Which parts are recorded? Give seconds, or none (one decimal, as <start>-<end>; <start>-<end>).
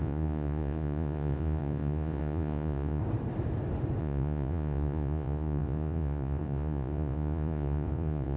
3.0-4.0